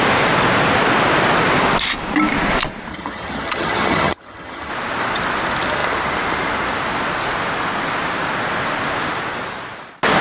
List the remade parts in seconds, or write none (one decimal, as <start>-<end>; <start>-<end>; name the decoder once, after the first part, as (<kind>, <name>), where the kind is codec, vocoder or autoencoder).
2.9-4.7 (vocoder, HiFi-GAN)